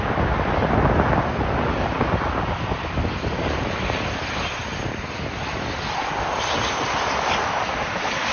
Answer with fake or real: real